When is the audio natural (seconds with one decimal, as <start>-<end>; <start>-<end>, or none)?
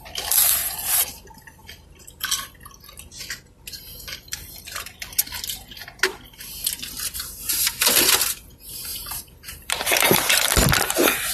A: 0.0-8.9; 10.3-11.3